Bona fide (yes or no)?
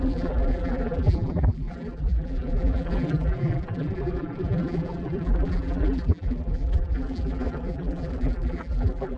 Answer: no